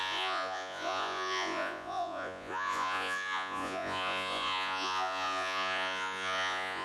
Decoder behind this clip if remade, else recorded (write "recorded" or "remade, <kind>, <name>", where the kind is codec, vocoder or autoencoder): remade, vocoder, Vocos